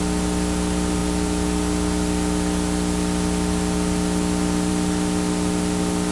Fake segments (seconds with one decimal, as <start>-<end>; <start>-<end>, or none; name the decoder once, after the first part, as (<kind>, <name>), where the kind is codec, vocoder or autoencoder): none